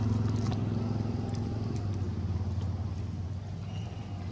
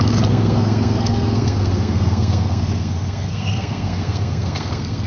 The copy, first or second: second